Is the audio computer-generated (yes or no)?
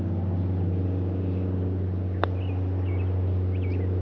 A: no